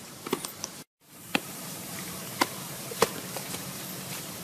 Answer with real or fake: fake